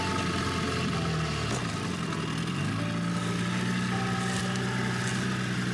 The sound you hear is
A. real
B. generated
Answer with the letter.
A